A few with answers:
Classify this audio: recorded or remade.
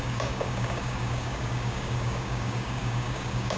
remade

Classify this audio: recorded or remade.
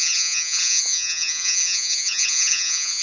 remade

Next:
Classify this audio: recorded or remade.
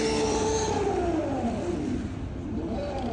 recorded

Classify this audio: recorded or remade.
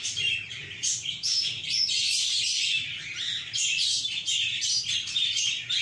remade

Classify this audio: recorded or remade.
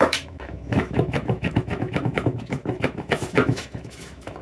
remade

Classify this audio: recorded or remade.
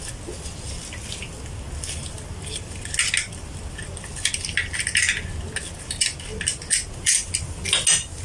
recorded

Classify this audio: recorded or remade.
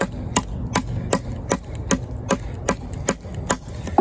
recorded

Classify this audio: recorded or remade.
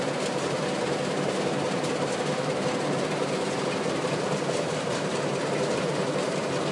remade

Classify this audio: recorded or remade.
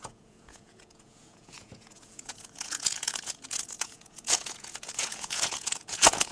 remade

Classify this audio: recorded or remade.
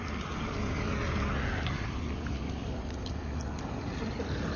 recorded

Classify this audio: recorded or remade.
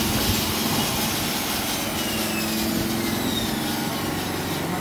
recorded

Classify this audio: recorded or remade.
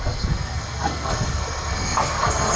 remade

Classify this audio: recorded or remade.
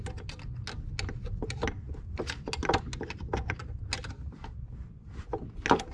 recorded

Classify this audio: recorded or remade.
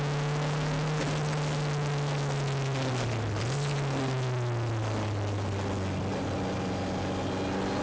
recorded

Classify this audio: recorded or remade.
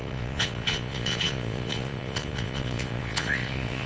remade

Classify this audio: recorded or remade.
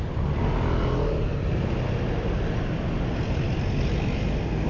recorded